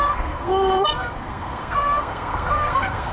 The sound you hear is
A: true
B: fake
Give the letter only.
B